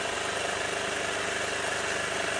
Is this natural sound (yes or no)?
yes